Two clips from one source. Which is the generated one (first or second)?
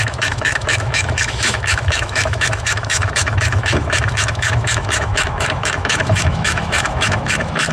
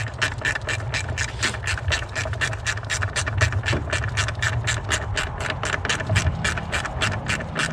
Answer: first